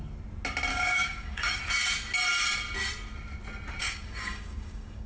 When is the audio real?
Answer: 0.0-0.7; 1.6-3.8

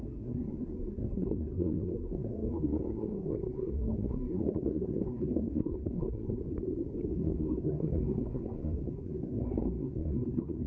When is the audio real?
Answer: 6.4-7.1

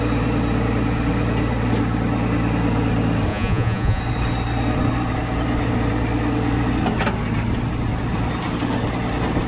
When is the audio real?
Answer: 0.0-3.3; 4.0-9.5

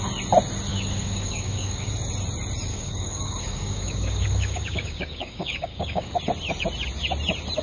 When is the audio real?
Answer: 0.0-0.7; 1.9-2.7; 6.2-7.6

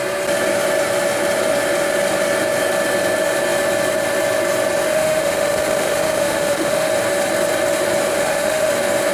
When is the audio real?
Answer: 0.0-4.9; 6.9-8.1; 8.7-9.1

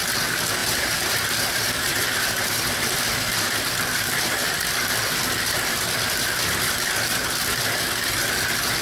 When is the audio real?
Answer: 0.0-0.6; 2.6-8.8

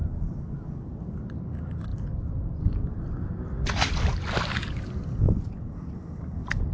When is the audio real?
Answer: 0.0-6.7